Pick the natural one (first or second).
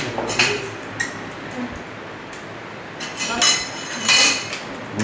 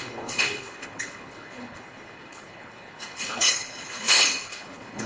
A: first